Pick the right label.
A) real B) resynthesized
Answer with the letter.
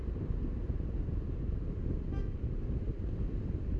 A